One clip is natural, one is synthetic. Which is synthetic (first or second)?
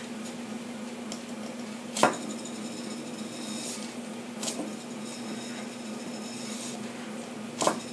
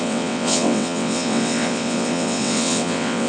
second